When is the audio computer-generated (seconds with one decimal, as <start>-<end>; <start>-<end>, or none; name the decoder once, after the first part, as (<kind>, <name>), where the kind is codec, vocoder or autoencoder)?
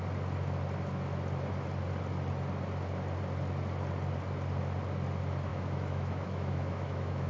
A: 5.5-7.3 (autoencoder, DAC-VAE)